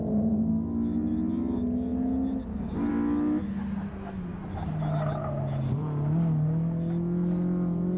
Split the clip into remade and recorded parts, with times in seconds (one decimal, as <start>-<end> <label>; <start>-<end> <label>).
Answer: 0.0-0.5 remade; 0.5-8.0 recorded